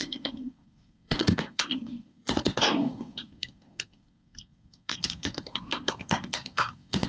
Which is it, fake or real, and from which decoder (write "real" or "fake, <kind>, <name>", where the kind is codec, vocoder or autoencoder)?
fake, codec, SNAC